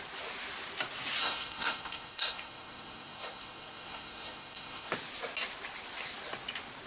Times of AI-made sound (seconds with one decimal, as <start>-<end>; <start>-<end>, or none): 1.2-4.9